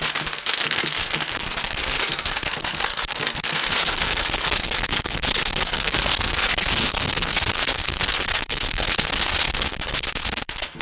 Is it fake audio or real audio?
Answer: fake